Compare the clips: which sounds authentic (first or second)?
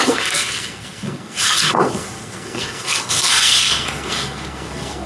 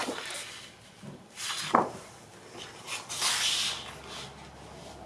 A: second